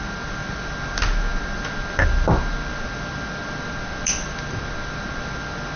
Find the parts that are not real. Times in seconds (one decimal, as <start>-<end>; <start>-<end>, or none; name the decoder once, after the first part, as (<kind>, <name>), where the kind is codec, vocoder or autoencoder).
none